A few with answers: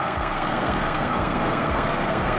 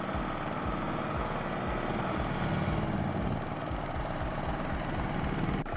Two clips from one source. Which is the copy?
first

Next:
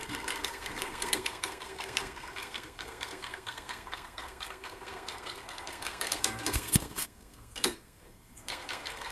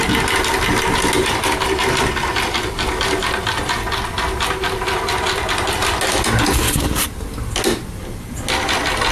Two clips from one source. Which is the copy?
first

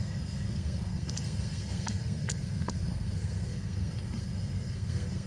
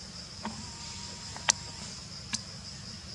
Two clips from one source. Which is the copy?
first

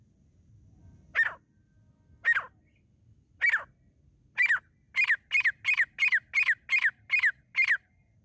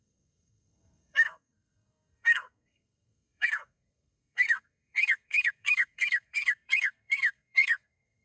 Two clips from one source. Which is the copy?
second